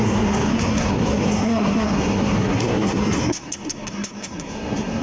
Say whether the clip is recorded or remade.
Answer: remade